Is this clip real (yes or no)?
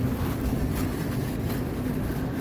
yes